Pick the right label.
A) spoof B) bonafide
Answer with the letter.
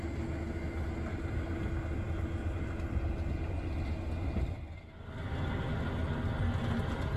B